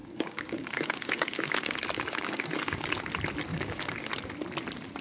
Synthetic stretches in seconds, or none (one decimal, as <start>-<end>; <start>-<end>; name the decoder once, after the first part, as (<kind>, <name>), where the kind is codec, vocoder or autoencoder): 0.0-3.0 (codec, DAC); 3.5-4.1